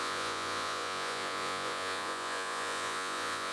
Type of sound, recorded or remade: remade